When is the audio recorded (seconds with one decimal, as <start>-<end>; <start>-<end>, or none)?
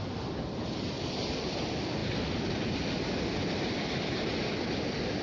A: 0.0-5.2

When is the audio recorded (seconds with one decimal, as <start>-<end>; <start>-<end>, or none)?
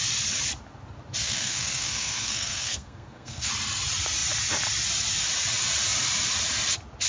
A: 0.0-1.2; 3.5-7.1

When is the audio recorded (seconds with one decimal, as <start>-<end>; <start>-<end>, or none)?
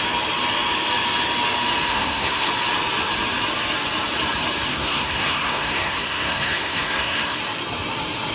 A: 0.0-1.9; 2.5-4.7; 7.4-8.3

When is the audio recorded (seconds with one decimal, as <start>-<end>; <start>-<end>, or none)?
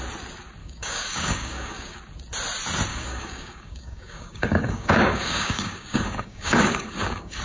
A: 0.0-0.6; 2.0-2.9